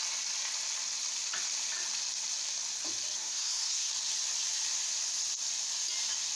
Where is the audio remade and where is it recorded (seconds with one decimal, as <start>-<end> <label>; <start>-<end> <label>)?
0.0-3.2 recorded; 3.2-3.9 remade; 3.9-6.3 recorded